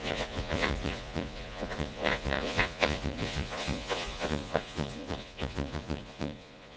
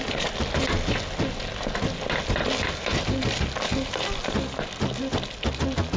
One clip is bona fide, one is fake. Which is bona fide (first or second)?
second